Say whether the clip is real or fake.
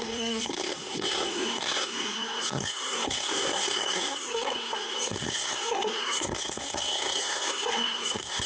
fake